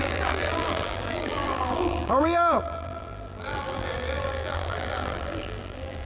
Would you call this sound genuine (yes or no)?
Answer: no